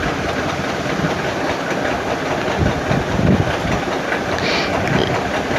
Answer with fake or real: real